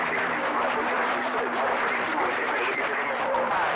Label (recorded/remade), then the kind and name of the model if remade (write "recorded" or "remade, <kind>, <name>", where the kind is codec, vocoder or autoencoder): remade, vocoder, BigVGAN v2